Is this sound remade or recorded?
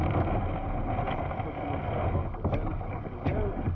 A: recorded